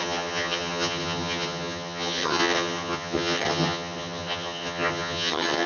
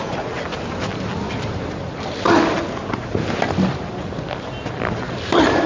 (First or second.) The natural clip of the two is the second